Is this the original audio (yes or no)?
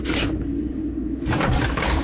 no